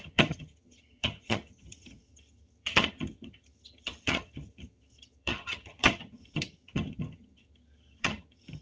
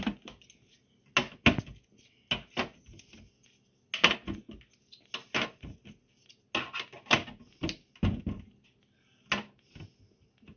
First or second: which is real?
second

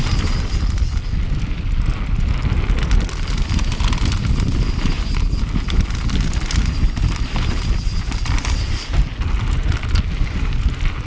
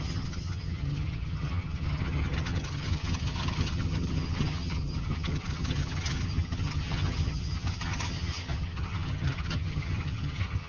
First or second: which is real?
first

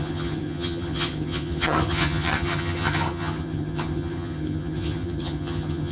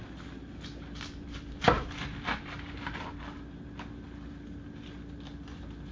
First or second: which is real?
second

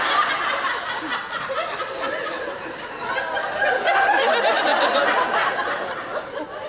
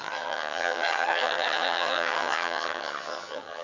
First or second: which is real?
first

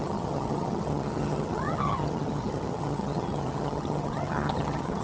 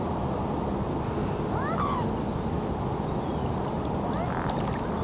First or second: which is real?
second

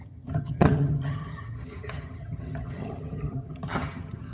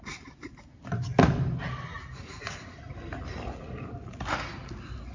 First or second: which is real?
second